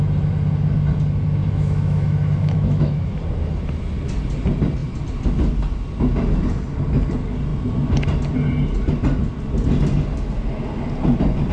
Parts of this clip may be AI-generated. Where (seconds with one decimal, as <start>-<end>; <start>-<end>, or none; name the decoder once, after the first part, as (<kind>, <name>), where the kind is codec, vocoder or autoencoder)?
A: 1.4-3.2 (autoencoder, DAC-VAE)